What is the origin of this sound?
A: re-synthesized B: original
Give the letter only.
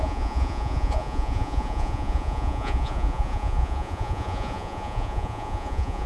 A